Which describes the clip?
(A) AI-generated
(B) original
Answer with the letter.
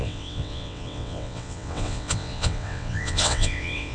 A